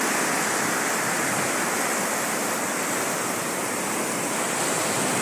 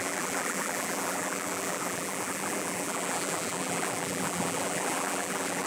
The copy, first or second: second